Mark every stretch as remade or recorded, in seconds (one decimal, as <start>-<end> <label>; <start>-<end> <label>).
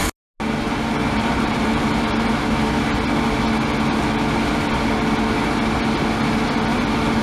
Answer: 0.0-1.0 recorded; 1.0-2.2 remade; 2.2-7.2 recorded